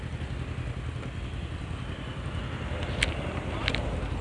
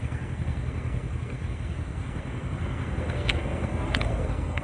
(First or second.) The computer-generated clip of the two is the second